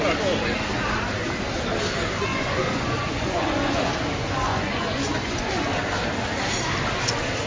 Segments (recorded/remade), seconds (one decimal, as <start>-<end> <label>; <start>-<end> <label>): 0.0-2.3 recorded; 2.3-3.9 remade; 3.9-4.5 recorded; 4.5-5.5 remade; 5.5-7.5 recorded